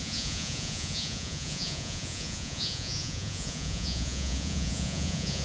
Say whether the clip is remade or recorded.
remade